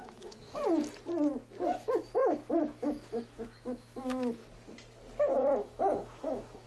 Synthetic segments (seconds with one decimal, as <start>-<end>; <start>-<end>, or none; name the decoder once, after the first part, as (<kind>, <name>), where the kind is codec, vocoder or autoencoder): 0.0-0.6 (autoencoder, DAC-VAE); 1.7-4.4; 5.3-6.7